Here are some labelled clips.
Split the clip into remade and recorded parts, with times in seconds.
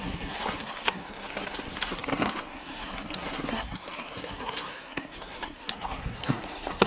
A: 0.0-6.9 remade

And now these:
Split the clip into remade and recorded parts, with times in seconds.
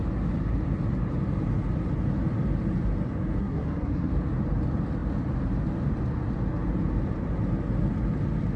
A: 0.0-3.4 recorded; 3.4-4.1 remade; 4.1-8.6 recorded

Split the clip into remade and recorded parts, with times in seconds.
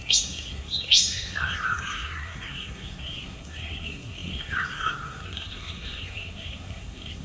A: 0.0-7.2 remade